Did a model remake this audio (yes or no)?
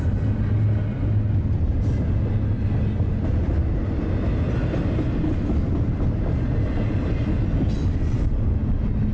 no